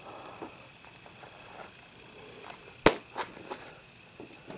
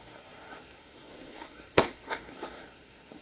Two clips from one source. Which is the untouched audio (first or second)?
first